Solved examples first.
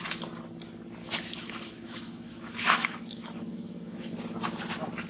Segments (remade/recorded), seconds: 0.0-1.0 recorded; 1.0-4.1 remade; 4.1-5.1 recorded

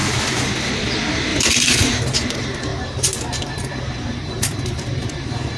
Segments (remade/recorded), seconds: 0.0-1.3 recorded; 1.3-2.0 remade; 2.0-2.7 recorded; 2.7-5.6 remade

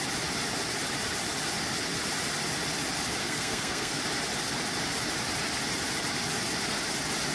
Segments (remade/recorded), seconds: 0.0-3.2 recorded; 3.2-4.0 remade; 4.0-7.3 recorded